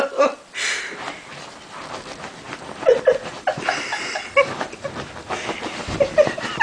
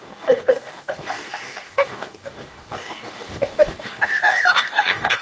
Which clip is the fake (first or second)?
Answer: second